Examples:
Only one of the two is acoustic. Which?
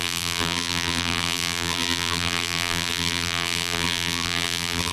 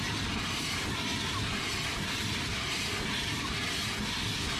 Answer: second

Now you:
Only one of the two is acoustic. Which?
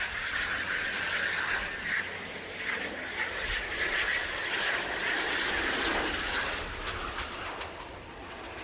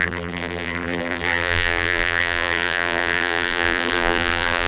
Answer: first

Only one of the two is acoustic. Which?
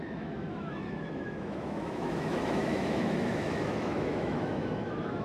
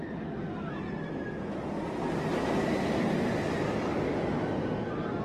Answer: second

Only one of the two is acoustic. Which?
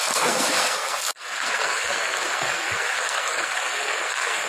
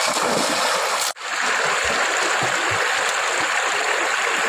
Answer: second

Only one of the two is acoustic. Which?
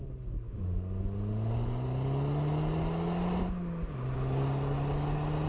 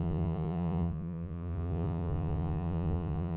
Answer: first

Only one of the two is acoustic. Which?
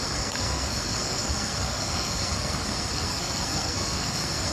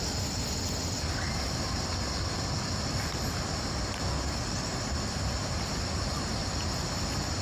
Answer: second